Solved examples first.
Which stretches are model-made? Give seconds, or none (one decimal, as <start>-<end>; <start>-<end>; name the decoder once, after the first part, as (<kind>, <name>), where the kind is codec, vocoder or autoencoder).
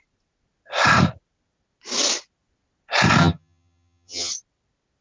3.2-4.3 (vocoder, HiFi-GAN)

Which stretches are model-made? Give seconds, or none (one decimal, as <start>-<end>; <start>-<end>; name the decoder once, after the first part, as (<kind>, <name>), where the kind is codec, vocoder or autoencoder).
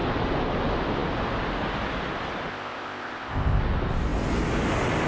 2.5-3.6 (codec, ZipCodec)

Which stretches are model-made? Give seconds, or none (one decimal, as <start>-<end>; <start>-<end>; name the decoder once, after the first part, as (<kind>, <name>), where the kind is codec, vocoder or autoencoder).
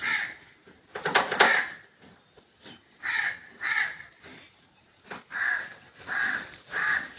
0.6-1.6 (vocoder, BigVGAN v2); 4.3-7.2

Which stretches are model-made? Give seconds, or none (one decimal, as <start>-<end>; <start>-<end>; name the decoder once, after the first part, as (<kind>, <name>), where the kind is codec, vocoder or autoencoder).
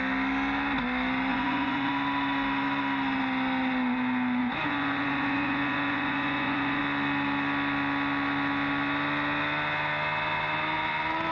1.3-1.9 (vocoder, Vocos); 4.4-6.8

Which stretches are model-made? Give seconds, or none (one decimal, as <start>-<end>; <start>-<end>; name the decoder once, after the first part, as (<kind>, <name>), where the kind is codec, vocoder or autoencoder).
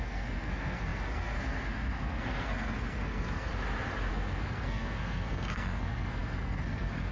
0.0-3.5 (codec, SNAC); 4.1-7.1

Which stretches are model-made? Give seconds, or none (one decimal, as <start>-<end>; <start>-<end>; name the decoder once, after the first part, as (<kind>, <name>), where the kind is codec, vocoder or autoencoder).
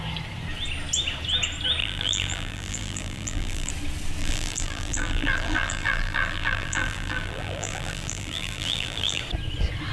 1.8-3.7 (vocoder, BigVGAN v2); 4.2-9.2